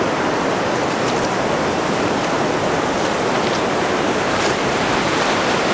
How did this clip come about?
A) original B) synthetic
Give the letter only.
A